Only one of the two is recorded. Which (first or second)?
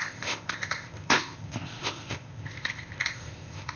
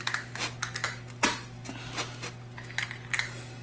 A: second